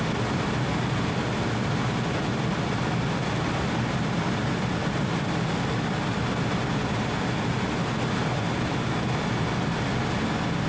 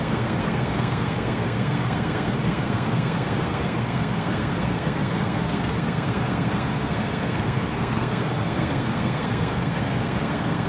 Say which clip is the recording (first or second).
first